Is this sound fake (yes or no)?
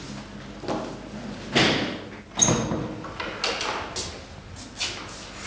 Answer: no